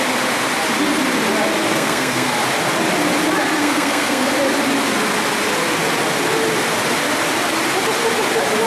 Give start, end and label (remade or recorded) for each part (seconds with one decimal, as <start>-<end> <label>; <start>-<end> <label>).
0.0-1.7 recorded; 1.7-2.3 remade; 2.3-3.6 recorded; 3.6-4.3 remade; 4.3-8.7 recorded